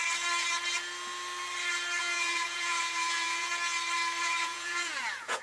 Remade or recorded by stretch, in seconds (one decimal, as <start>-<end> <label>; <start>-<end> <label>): 0.0-2.0 recorded; 2.0-3.5 remade; 3.5-4.2 recorded; 4.2-5.4 remade